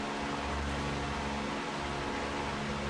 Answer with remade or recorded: recorded